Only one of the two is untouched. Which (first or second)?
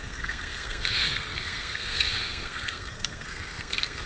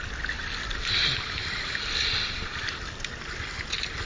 second